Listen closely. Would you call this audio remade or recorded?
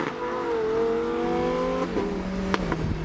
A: recorded